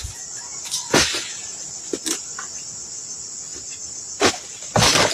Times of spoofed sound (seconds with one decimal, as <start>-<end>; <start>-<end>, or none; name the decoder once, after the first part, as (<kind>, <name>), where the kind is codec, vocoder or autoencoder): none